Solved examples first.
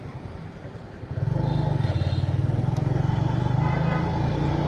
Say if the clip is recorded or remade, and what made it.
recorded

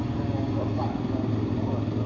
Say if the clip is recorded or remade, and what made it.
recorded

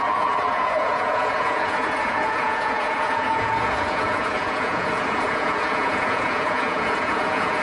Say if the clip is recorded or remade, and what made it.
remade, vocoder, Vocos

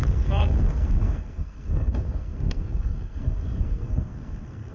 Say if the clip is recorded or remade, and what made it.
remade, codec, SNAC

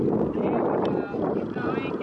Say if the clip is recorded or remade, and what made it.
recorded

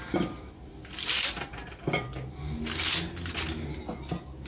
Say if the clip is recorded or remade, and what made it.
recorded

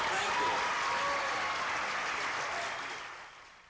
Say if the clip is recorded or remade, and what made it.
recorded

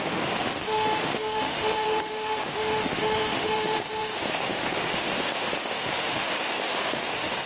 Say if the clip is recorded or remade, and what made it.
remade, autoencoder, DAC-VAE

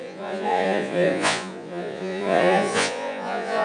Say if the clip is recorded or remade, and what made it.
remade, vocoder, Vocos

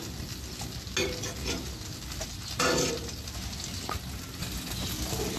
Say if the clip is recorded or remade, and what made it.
recorded